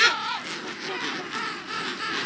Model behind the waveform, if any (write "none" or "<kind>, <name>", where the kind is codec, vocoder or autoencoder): none